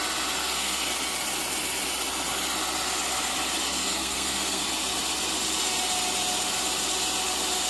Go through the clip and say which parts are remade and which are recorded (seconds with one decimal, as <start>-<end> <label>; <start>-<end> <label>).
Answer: 0.0-0.4 recorded; 0.4-0.9 remade; 0.9-3.8 recorded; 3.8-4.6 remade; 4.6-7.7 recorded